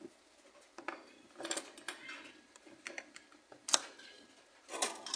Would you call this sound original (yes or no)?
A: yes